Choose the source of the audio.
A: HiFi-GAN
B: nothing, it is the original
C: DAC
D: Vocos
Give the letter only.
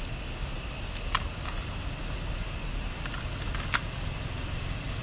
B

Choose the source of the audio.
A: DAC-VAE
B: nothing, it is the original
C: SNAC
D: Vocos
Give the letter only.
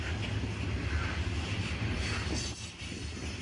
B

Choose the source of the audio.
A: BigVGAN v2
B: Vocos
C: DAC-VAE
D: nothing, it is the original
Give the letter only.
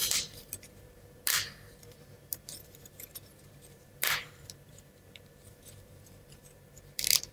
A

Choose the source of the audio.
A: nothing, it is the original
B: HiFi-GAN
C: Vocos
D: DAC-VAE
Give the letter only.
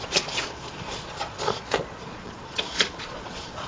C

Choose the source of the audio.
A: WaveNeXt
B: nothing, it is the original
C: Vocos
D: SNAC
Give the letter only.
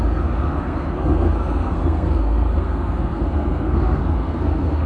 D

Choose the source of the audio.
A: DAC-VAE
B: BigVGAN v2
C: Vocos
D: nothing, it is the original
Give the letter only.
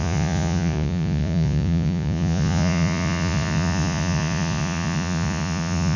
C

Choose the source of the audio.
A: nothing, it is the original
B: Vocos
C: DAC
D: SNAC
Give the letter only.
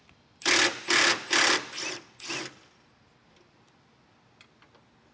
A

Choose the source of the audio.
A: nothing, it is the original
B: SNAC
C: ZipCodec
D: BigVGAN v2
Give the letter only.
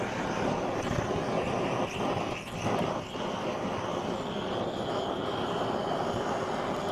A